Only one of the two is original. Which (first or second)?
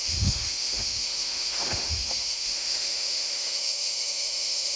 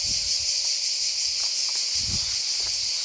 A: second